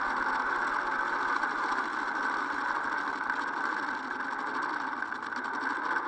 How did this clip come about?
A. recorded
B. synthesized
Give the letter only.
A